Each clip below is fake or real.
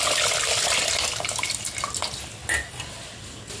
real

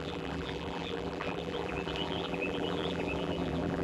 fake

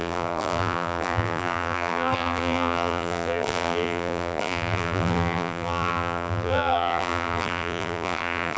fake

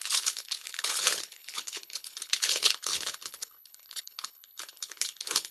fake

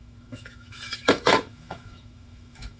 fake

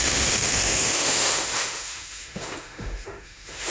fake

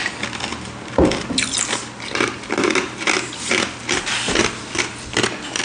real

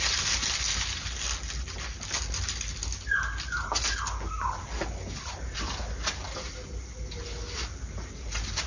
real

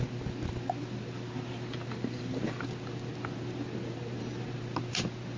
real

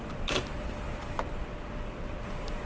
real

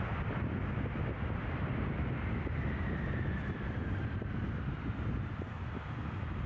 real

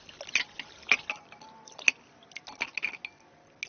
real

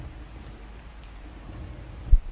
real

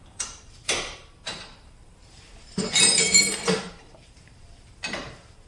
fake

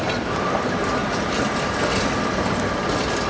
real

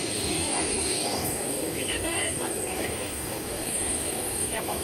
fake